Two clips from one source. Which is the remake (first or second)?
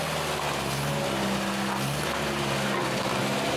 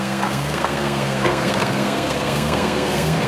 second